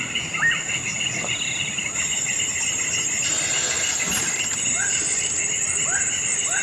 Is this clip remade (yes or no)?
no